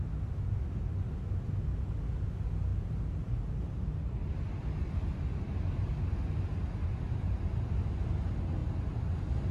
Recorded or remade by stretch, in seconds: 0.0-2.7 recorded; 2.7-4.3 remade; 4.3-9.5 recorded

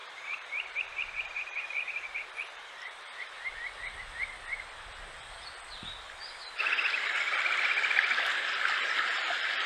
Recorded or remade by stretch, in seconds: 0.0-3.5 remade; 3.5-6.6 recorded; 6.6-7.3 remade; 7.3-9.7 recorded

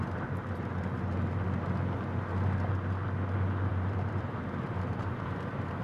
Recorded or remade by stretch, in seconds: 0.0-3.7 recorded; 3.7-5.8 remade

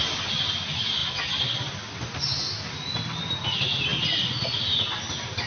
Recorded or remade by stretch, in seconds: 0.0-5.5 recorded